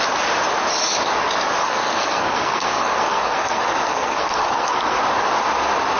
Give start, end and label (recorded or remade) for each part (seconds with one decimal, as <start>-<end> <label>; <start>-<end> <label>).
0.0-1.6 recorded; 1.6-5.0 remade; 5.0-6.0 recorded